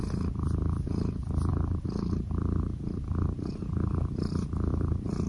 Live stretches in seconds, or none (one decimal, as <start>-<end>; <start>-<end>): 0.0-5.3